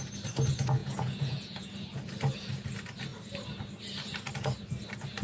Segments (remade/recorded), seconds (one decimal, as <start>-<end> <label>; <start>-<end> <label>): 0.0-0.8 recorded; 0.8-1.7 remade; 1.7-5.2 recorded